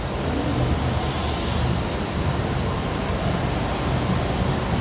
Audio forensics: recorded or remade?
recorded